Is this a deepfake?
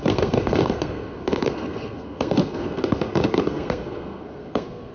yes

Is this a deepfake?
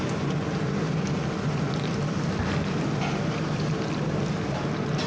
no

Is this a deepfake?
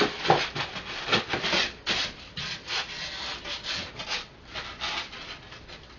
no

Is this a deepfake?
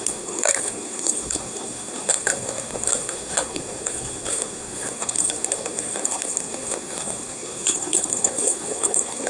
yes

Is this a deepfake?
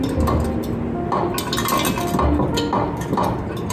no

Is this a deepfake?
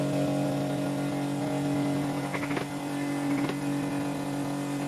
no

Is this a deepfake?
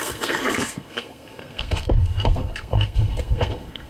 yes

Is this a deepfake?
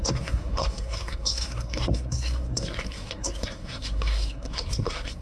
yes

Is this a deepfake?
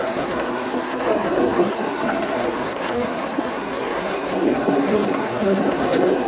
yes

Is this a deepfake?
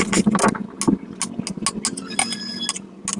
no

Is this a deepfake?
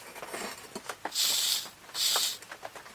no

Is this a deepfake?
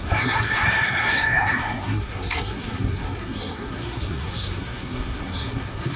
yes